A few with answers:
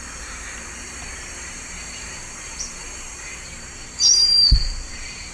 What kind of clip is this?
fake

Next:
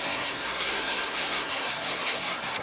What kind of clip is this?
fake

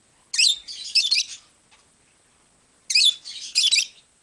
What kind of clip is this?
real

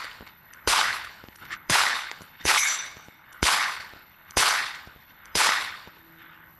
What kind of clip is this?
fake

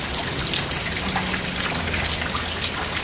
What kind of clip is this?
real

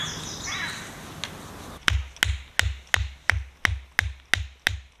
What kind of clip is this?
real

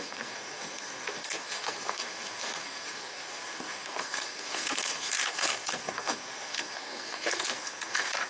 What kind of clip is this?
fake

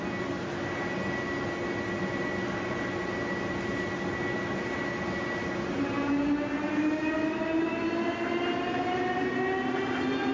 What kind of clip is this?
real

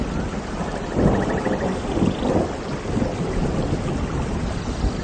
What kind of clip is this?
real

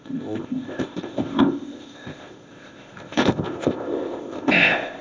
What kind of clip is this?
fake